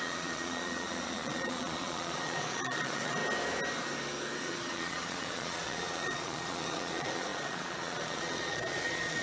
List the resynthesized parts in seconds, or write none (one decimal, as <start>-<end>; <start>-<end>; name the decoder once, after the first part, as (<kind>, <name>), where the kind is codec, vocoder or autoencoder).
0.0-3.2 (vocoder, Vocos); 4.4-9.2